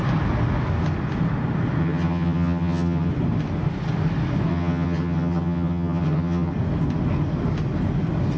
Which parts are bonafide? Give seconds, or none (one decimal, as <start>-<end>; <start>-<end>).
0.0-1.8; 3.1-4.5; 6.5-8.4